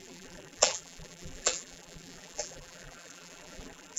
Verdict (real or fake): fake